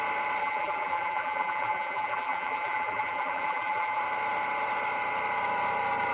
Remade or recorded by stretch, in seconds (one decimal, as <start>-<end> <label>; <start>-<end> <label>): 0.0-0.4 recorded; 0.4-4.0 remade; 4.0-6.1 recorded

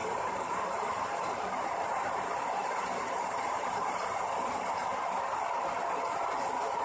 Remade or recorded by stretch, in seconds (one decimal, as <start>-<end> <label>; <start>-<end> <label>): 0.0-4.1 remade; 4.1-6.8 recorded

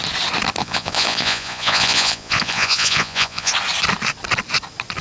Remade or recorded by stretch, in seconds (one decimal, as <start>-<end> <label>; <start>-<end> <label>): 0.0-0.6 recorded; 0.6-3.5 remade; 3.5-5.0 recorded

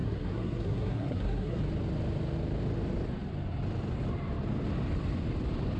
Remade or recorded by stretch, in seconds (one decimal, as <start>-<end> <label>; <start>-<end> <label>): 0.0-1.6 remade; 1.6-5.8 recorded

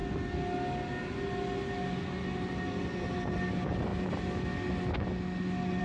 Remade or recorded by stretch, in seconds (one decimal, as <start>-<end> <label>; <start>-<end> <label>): 0.0-5.8 recorded

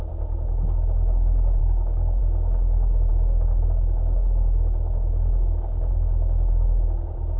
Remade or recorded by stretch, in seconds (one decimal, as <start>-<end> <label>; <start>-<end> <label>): 0.0-1.6 recorded; 1.6-2.2 remade; 2.2-7.4 recorded